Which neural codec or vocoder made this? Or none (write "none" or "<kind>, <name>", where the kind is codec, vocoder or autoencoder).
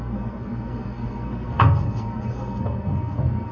codec, SNAC